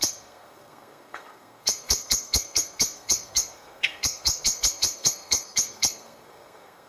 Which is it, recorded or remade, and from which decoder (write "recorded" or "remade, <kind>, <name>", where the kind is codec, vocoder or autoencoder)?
remade, codec, SNAC